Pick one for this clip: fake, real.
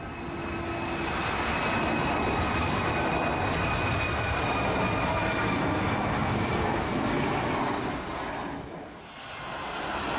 real